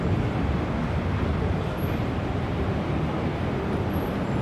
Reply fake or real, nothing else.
fake